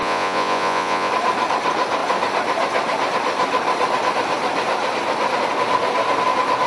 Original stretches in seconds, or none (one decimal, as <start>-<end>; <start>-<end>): 1.1-6.7